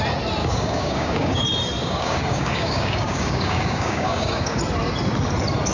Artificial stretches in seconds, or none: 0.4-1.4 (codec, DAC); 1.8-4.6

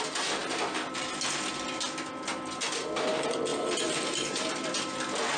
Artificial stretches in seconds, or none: 3.5-5.0 (vocoder, BigVGAN v2)

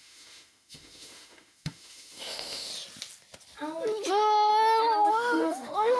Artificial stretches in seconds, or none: 0.0-2.7 (autoencoder, DAC-VAE); 4.1-4.5; 5.1-6.0

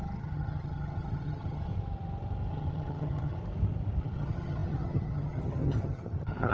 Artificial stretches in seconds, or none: 0.0-1.7 (vocoder, HiFi-GAN); 2.5-3.4; 4.0-6.5

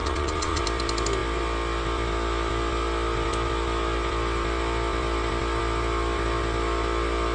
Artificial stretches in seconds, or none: 0.0-0.6 (vocoder, Vocos)

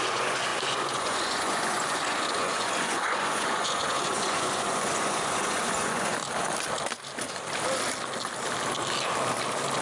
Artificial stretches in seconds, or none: 0.0-6.2 (vocoder, Vocos)

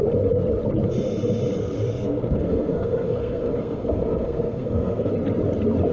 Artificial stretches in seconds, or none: 1.6-5.1 (codec, SNAC)

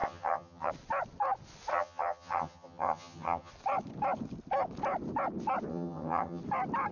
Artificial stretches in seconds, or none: 0.0-0.7 (vocoder, HiFi-GAN); 1.7-3.5; 5.7-6.4